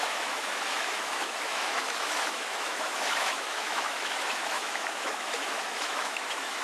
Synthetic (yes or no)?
yes